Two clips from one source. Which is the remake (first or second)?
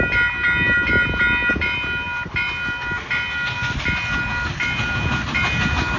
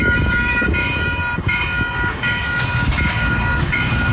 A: second